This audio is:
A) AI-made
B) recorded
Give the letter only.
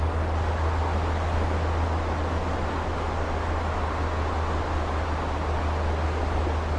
B